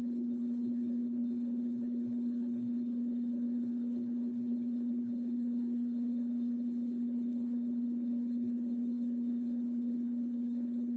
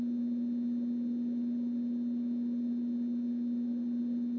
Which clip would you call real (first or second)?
second